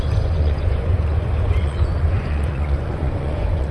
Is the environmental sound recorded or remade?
remade